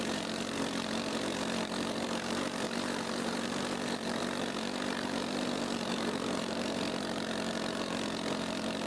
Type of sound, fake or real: fake